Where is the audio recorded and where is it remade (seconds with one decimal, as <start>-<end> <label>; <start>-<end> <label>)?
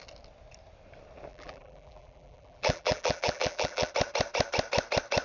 0.0-1.3 recorded; 1.3-3.9 remade; 3.9-5.2 recorded